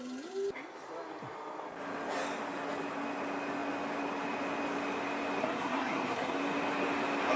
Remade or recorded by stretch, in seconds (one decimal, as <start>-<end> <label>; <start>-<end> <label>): 0.0-5.4 recorded; 5.4-6.4 remade; 6.4-7.4 recorded